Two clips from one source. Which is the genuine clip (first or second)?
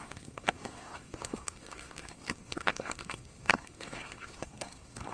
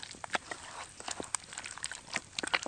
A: second